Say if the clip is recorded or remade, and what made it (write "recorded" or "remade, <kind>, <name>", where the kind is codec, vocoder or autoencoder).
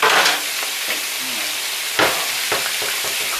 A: recorded